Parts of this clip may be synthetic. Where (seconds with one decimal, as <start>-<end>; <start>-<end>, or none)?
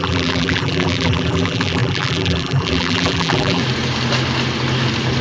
0.0-3.6